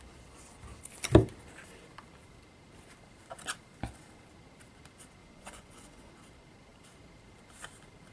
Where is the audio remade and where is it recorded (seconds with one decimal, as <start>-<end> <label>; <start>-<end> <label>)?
0.0-5.2 recorded; 5.2-6.1 remade; 6.1-8.1 recorded